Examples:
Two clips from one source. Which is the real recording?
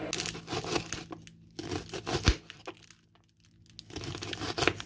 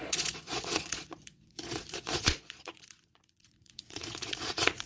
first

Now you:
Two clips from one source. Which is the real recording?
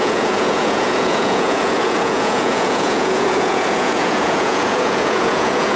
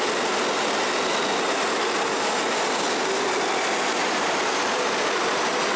second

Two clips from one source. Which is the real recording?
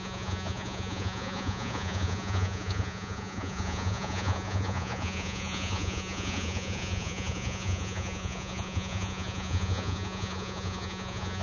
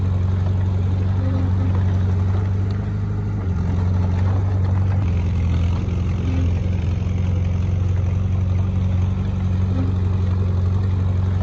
second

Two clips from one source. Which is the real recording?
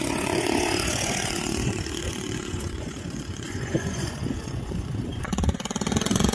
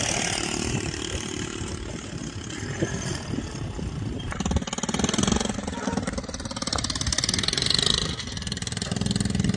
second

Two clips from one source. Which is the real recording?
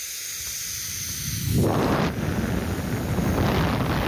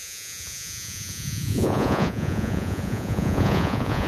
first